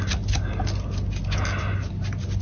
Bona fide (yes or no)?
yes